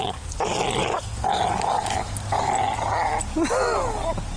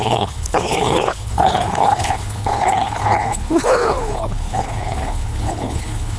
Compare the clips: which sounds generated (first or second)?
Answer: second